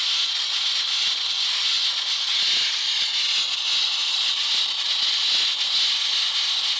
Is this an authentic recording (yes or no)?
yes